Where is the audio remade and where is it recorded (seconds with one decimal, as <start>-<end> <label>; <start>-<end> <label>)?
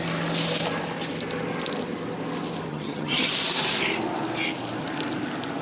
0.0-2.7 recorded; 2.7-3.3 remade; 3.3-5.6 recorded